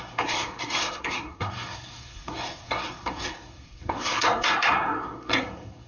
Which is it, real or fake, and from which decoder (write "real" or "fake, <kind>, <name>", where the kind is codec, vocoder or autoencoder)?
fake, codec, SNAC